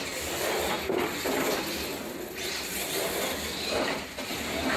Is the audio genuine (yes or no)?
yes